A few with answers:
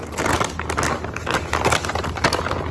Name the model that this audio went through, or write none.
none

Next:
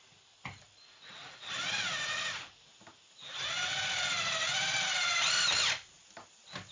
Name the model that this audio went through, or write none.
none